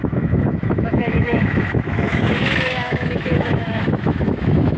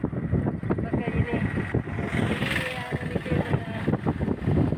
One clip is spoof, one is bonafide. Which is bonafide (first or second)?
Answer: second